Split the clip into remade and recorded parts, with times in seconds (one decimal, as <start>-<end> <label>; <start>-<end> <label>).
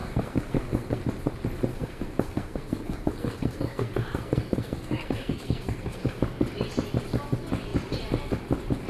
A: 0.0-1.0 remade; 1.0-1.7 recorded; 1.7-6.2 remade; 6.2-8.9 recorded